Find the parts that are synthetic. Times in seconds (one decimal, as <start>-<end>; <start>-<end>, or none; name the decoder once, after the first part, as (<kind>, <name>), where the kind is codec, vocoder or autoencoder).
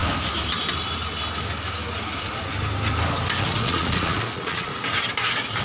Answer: 3.4-4.7 (vocoder, Vocos)